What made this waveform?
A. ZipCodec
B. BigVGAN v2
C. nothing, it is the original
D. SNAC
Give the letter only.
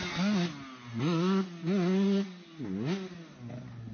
C